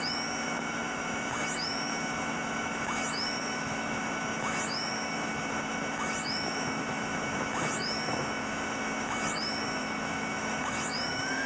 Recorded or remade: remade